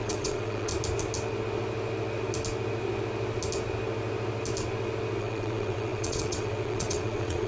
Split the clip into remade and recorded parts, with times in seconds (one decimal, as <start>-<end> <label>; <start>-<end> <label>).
0.0-0.7 remade; 0.7-5.2 recorded; 5.2-7.5 remade